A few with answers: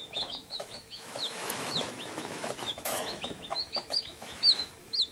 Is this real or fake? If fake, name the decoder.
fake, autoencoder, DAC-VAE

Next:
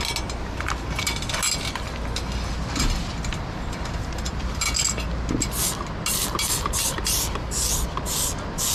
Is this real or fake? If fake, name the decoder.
real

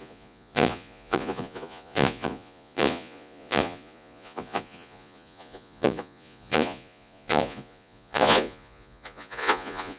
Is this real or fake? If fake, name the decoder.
fake, vocoder, Vocos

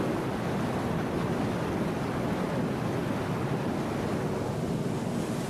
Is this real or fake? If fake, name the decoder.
real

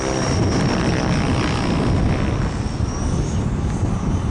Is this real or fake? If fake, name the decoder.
real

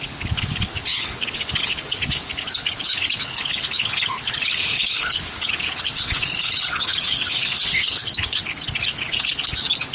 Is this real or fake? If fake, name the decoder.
fake, codec, HILCodec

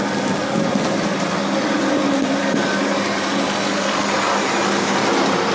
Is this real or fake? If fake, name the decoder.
real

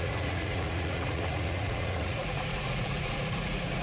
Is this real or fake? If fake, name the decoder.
fake, vocoder, Vocos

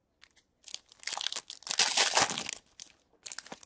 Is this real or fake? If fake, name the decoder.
real